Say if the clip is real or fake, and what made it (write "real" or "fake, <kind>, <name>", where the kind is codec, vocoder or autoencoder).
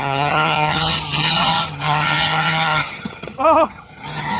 fake, vocoder, HiFi-GAN